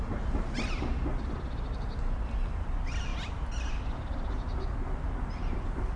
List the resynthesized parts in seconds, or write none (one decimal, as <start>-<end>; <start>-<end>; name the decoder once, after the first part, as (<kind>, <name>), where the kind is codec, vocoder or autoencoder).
none